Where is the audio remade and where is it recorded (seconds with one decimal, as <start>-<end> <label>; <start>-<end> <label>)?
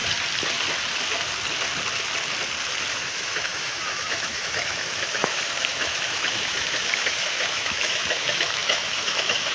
0.0-2.9 recorded; 2.9-9.5 remade